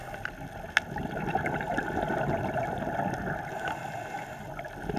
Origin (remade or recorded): recorded